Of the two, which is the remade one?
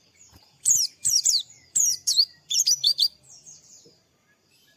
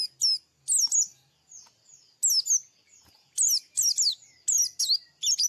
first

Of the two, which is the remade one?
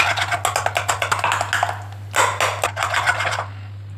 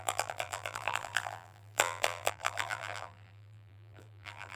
second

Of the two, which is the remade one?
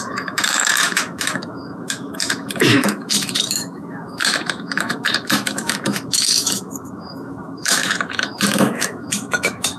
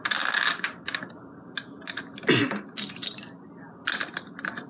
first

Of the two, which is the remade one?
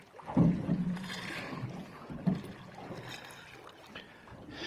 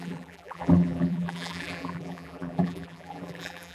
second